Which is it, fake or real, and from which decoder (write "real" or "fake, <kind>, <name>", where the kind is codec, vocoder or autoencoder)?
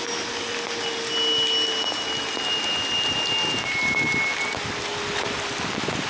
real